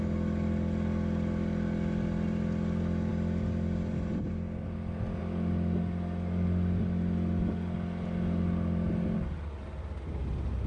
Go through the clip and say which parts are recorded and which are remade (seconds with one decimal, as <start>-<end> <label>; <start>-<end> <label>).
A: 0.0-10.7 recorded